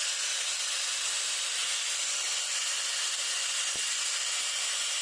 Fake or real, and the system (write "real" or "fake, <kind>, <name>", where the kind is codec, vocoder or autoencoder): real